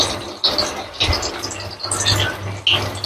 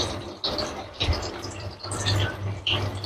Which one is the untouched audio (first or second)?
first